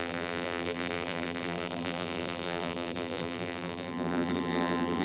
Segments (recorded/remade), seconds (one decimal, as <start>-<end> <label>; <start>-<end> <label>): 0.0-5.0 remade